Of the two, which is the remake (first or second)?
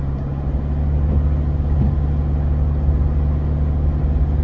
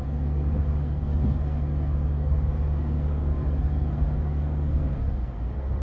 second